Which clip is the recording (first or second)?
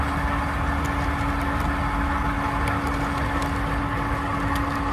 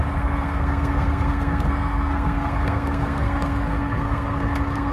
first